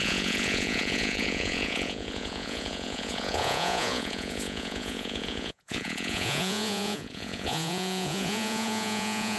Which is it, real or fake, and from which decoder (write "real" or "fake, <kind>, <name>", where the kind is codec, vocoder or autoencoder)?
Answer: fake, vocoder, Vocos